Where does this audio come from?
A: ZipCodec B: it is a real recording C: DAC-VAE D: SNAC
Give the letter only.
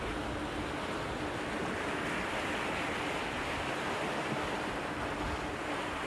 B